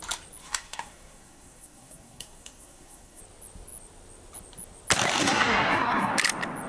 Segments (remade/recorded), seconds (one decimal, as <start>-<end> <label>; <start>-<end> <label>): 0.0-0.4 recorded; 0.4-3.2 remade; 3.2-5.2 recorded; 5.2-6.1 remade; 6.1-6.7 recorded